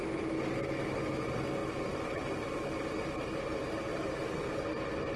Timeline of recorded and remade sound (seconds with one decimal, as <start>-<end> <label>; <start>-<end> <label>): 0.0-1.6 recorded; 1.6-3.5 remade; 3.5-3.9 recorded; 3.9-5.2 remade